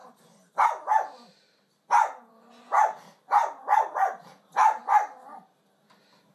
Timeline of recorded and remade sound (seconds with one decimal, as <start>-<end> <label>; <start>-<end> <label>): 0.0-6.3 recorded

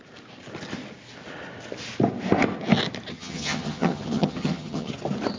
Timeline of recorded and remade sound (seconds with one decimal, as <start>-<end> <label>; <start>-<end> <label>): 0.0-3.1 recorded; 3.1-4.9 remade; 4.9-5.4 recorded

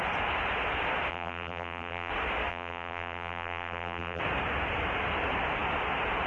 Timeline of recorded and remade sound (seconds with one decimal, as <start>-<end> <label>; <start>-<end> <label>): 0.0-1.1 recorded; 1.1-2.1 remade; 2.1-2.5 recorded; 2.5-4.2 remade; 4.2-6.3 recorded